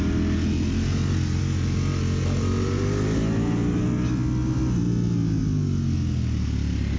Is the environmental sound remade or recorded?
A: recorded